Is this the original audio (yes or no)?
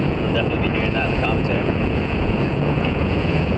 no